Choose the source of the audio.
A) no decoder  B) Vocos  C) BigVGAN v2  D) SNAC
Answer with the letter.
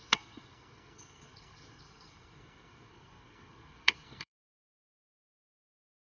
D